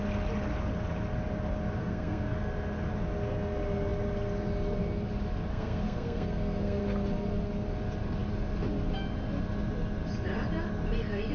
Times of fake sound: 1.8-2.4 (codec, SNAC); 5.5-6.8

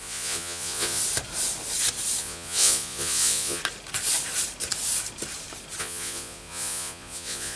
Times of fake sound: 0.0-1.0 (vocoder, Vocos); 2.2-3.6; 5.8-7.6